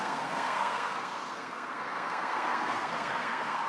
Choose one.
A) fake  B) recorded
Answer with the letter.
A